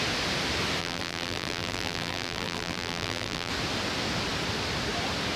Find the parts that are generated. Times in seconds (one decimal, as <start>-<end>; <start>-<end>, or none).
0.8-3.5